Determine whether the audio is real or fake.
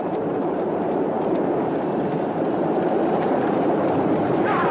fake